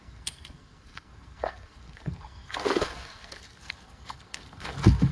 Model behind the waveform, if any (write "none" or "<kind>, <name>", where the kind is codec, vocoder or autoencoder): codec, SNAC